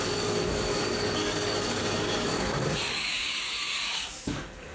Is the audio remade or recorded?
remade